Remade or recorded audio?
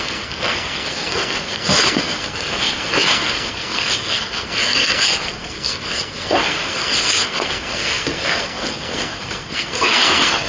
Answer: remade